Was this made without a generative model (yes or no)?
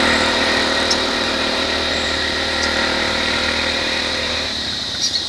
no